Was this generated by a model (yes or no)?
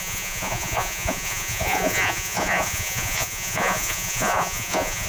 yes